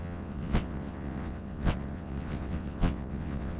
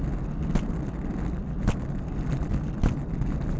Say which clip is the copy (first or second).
first